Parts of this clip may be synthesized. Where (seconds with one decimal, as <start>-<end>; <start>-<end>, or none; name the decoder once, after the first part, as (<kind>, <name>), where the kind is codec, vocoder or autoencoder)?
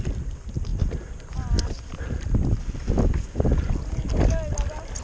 none